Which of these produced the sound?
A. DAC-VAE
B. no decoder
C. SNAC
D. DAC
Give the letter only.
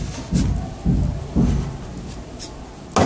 B